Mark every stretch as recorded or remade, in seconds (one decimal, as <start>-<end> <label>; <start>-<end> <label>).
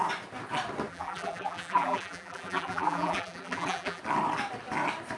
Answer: 0.0-0.9 recorded; 0.9-4.0 remade; 4.0-5.2 recorded